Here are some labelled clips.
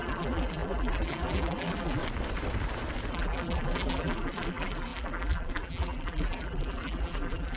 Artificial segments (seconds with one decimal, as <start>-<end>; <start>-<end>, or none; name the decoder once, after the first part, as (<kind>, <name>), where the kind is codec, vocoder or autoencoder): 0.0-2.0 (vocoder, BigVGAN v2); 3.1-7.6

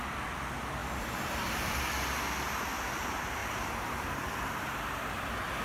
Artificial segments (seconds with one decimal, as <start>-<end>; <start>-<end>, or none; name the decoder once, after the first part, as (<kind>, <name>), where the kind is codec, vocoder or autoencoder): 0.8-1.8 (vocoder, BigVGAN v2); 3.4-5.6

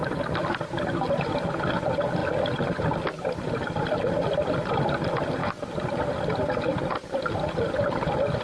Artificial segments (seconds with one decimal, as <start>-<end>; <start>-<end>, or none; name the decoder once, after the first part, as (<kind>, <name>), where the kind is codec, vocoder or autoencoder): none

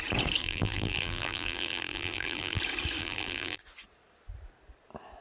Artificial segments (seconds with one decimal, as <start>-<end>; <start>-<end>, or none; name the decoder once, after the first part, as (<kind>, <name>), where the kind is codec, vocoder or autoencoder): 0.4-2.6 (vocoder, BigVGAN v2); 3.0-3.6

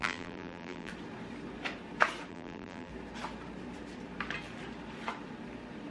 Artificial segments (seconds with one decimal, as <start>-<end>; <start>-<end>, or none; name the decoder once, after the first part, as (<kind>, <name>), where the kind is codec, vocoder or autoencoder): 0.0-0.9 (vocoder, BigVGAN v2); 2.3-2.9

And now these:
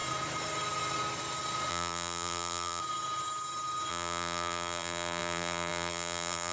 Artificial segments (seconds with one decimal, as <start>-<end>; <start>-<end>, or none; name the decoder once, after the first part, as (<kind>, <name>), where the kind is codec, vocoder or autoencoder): 1.7-2.8 (vocoder, BigVGAN v2); 3.9-6.5

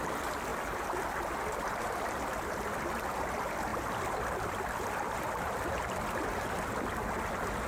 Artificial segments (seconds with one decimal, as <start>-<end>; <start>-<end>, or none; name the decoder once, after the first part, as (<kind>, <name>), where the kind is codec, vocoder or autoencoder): 3.7-6.3 (vocoder, BigVGAN v2)

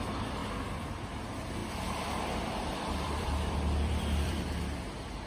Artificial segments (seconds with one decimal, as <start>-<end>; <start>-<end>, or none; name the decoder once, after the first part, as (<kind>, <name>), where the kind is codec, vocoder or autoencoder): 1.6-4.8 (vocoder, BigVGAN v2)